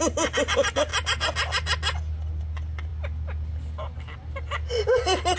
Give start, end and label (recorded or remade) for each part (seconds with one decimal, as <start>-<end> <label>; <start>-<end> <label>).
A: 0.0-5.4 recorded